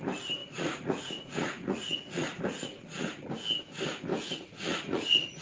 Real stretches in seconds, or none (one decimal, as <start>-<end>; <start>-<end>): 0.0-0.4; 3.3-4.1